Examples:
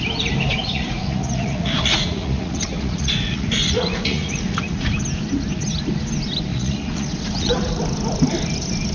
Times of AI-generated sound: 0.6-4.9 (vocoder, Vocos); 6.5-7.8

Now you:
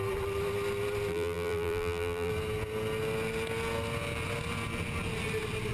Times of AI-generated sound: 1.1-2.3 (vocoder, BigVGAN v2)

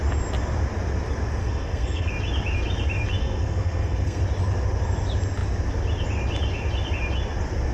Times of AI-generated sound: 1.4-2.1 (codec, SNAC); 3.2-4.2